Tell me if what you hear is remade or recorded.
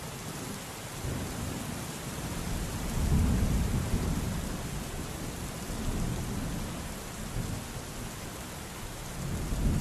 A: recorded